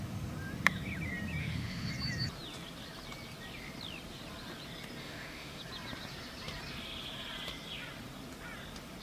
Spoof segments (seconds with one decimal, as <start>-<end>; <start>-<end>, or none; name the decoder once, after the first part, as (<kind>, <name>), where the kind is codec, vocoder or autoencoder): 1.4-1.9 (autoencoder, DAC-VAE); 5.0-5.6